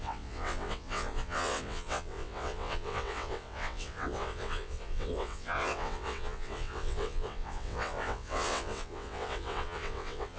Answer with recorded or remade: remade